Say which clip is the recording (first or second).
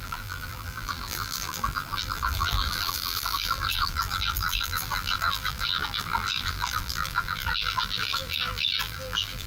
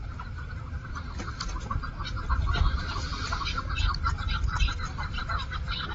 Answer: second